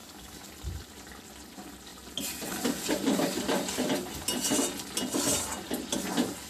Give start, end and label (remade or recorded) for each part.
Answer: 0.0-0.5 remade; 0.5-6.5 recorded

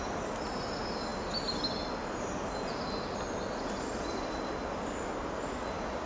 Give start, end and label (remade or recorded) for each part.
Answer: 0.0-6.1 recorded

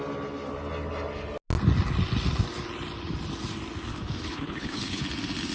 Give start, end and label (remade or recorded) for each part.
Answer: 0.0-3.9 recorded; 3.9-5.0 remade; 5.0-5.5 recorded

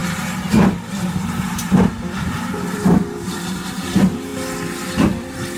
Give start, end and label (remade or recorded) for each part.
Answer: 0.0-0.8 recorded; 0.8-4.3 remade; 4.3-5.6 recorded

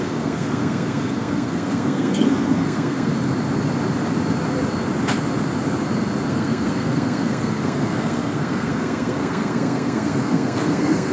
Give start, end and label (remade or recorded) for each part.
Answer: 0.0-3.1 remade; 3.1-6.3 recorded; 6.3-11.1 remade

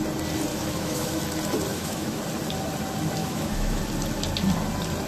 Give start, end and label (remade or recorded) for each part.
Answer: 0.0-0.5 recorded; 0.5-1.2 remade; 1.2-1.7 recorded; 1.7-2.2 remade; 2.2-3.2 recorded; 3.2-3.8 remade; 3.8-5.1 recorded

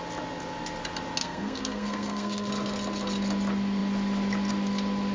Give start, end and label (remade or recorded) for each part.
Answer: 0.0-1.2 recorded; 1.2-2.5 remade; 2.5-5.1 recorded